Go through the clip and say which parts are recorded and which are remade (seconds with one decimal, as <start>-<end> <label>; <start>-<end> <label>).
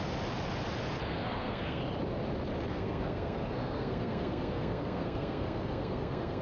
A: 0.0-1.1 recorded; 1.1-1.8 remade; 1.8-2.7 recorded; 2.7-6.4 remade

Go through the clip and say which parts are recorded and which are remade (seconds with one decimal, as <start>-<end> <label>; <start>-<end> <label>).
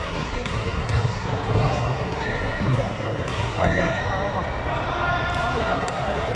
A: 0.0-4.0 remade; 4.0-5.6 recorded; 5.6-6.4 remade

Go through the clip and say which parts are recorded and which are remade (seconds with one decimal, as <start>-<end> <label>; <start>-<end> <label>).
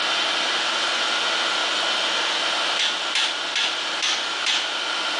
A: 0.0-5.2 recorded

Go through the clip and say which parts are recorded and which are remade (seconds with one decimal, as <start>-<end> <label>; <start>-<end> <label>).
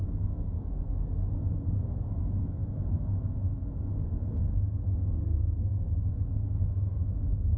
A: 0.0-7.6 remade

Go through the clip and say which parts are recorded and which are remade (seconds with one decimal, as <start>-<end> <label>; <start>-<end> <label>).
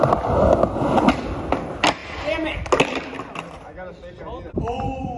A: 0.0-5.2 recorded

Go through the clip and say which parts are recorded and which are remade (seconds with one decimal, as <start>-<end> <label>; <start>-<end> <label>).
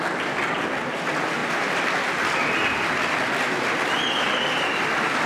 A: 0.0-5.3 recorded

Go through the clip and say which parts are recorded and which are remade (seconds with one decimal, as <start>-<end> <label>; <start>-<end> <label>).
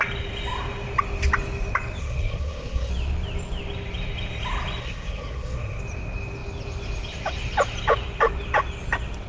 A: 0.0-2.0 recorded; 2.0-2.9 remade; 2.9-4.8 recorded; 4.8-5.8 remade; 5.8-9.3 recorded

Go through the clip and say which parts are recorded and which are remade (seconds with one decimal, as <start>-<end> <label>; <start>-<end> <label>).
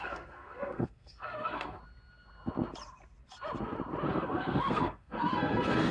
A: 0.0-1.8 remade; 1.8-4.1 recorded; 4.1-5.9 remade